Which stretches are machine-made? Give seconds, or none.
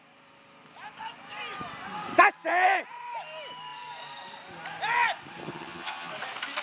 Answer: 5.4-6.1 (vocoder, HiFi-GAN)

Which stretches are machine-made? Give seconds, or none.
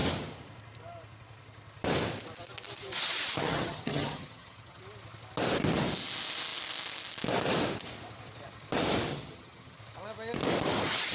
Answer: 3.4-4.8 (vocoder, HiFi-GAN); 9.1-9.8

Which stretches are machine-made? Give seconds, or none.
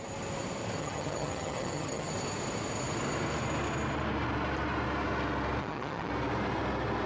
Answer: 0.8-2.1 (vocoder, HiFi-GAN); 5.6-6.1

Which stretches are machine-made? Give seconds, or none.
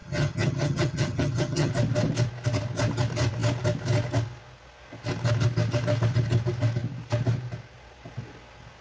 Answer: 0.0-1.7 (vocoder, HiFi-GAN)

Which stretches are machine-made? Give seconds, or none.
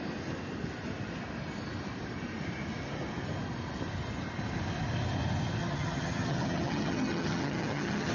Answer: 5.6-8.1 (vocoder, HiFi-GAN)